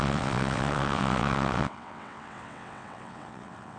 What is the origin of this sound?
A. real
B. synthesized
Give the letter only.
B